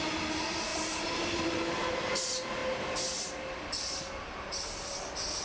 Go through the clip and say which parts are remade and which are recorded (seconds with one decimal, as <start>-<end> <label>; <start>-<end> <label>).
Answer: 0.0-5.4 recorded